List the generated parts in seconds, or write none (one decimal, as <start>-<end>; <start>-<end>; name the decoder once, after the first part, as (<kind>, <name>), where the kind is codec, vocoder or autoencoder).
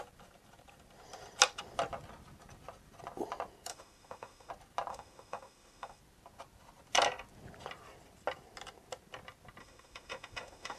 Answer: 3.7-4.5 (autoencoder, DAC-VAE); 4.9-6.0; 9.6-10.8